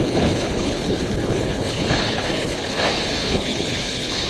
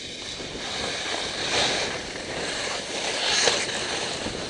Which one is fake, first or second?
first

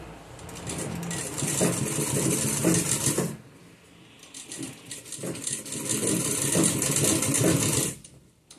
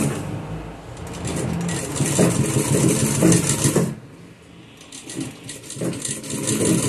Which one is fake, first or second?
first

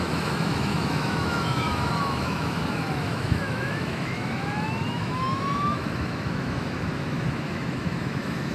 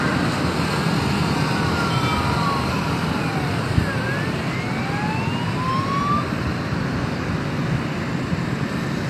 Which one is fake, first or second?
first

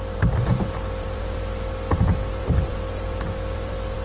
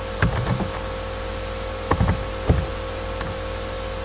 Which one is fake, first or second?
first